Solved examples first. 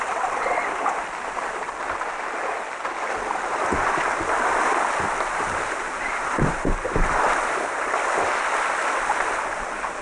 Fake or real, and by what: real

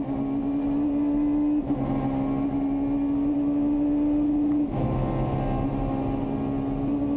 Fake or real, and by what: real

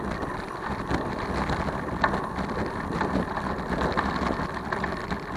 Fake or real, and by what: real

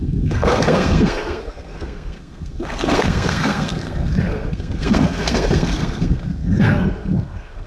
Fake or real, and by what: fake, codec, SNAC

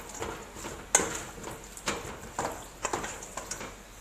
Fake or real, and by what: real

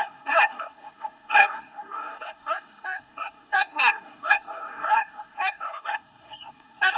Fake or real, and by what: fake, codec, SNAC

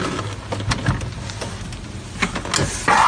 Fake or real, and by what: real